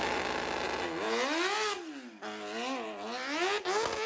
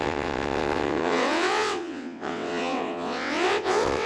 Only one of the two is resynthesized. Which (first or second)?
second